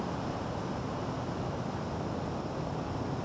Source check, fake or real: real